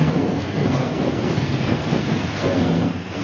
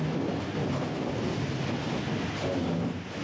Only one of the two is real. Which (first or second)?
second